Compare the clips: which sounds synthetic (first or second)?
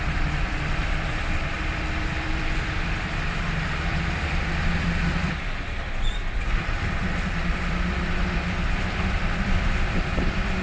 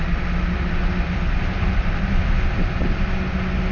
first